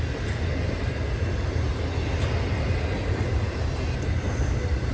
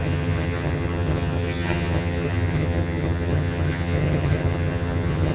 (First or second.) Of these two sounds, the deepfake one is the second